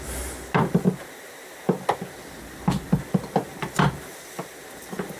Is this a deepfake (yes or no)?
no